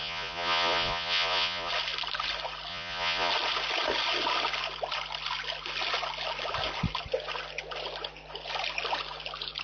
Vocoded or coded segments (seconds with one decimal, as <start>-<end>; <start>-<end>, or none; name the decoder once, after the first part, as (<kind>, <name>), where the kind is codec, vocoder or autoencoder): 0.0-1.7 (vocoder, Vocos); 2.7-3.3